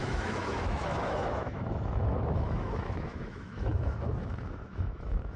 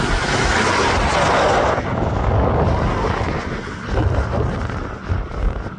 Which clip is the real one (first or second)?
second